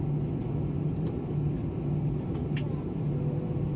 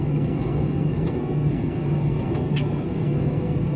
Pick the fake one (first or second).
second